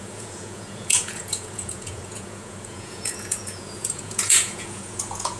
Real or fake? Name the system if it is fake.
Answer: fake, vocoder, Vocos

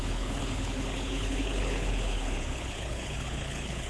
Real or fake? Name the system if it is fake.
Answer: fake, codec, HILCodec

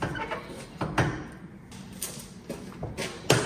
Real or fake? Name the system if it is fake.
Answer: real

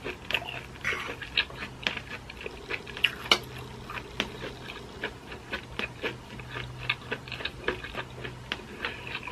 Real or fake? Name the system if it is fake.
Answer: real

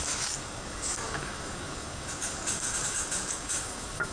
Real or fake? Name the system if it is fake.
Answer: fake, codec, DAC